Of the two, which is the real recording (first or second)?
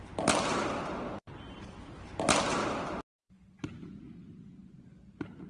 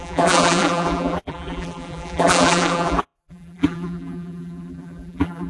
first